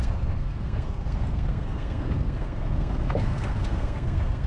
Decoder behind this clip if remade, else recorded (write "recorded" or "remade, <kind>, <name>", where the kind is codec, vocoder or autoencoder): remade, codec, SNAC